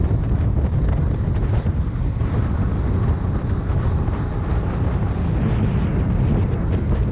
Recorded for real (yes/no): yes